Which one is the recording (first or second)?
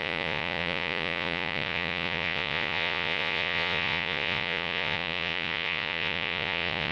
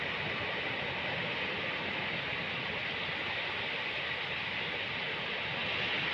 second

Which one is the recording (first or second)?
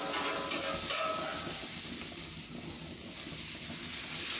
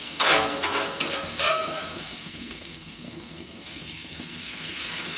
first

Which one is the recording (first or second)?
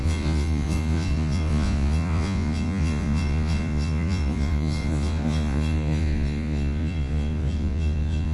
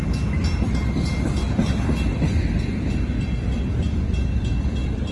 second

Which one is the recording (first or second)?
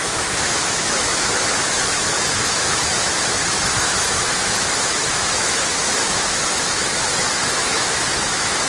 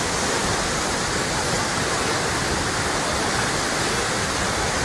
second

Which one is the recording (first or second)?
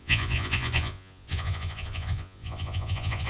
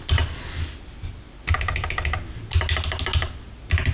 second